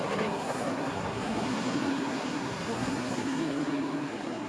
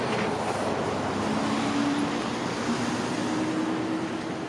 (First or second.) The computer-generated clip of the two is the first